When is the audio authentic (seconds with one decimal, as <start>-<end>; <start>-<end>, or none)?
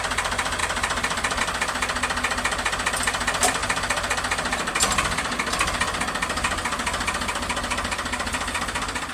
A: 0.0-0.6; 1.4-9.1